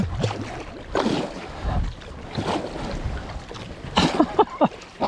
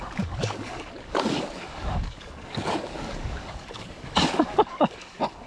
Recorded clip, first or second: first